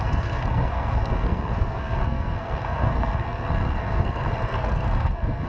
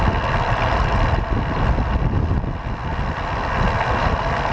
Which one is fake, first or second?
first